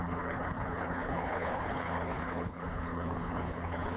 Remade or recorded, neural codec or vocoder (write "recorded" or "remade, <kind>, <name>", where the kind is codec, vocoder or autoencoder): remade, codec, HILCodec